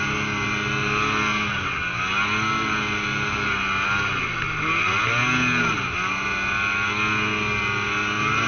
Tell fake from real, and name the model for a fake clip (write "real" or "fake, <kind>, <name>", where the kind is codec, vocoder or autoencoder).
real